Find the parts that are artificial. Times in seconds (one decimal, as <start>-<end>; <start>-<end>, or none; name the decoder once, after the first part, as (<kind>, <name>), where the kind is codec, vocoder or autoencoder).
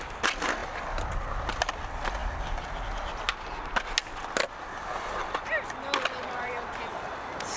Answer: none